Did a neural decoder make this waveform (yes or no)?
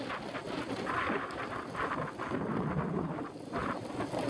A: no